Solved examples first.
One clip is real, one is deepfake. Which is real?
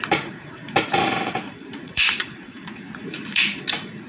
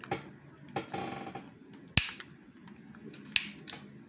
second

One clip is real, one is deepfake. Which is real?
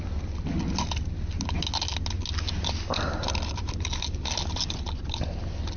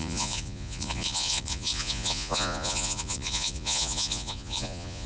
first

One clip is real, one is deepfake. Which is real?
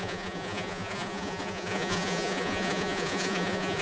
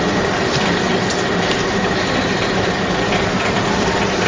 second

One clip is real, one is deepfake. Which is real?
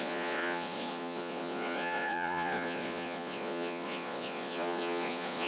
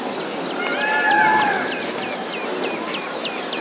second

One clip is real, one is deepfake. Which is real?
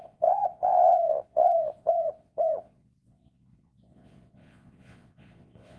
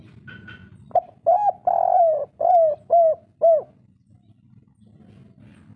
second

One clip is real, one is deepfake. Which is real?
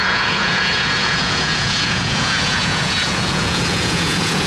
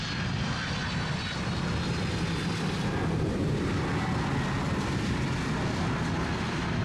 second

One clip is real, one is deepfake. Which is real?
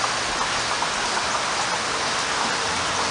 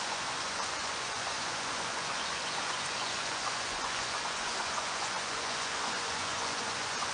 first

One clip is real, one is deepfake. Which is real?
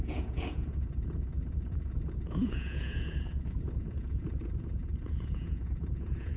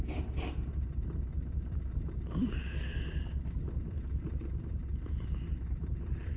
second